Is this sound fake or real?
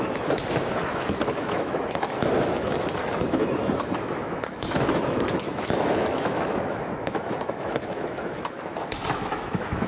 fake